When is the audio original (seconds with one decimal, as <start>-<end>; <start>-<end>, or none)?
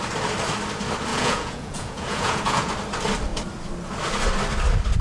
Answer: 0.0-1.1; 2.7-5.0